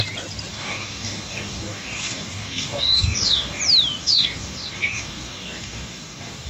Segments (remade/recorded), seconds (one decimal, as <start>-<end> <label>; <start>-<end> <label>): 0.0-0.5 recorded; 0.5-3.6 remade; 3.6-4.0 recorded; 4.0-6.5 remade